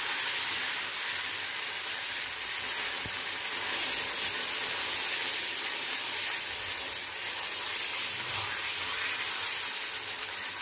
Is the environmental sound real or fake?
real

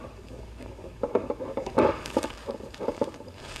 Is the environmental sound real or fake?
fake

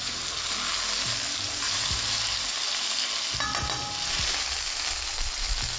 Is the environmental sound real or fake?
real